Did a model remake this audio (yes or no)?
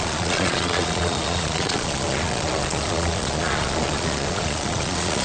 yes